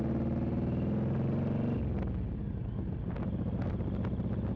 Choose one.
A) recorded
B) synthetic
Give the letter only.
A